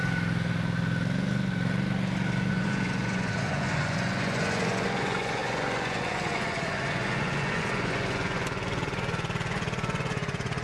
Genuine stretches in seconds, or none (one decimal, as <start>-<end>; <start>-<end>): 0.0-2.5